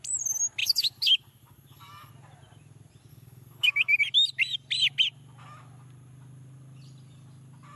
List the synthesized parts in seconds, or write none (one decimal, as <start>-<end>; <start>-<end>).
0.6-2.1; 3.1-4.0